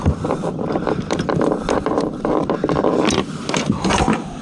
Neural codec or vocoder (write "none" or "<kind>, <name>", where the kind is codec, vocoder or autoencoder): vocoder, BigVGAN v2